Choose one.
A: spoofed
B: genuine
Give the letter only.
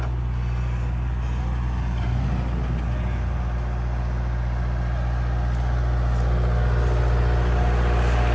B